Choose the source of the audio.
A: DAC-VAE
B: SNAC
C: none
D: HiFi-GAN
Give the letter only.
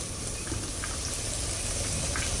C